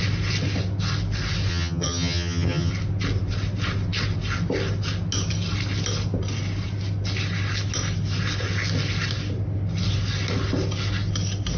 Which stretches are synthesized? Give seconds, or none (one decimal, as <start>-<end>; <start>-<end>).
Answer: 1.5-2.7